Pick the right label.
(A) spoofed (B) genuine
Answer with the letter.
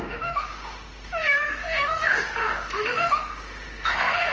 A